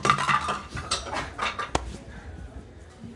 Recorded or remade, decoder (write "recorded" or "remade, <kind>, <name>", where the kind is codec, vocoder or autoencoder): recorded